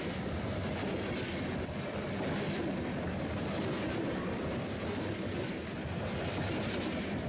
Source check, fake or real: real